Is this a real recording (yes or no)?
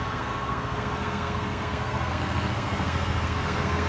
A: no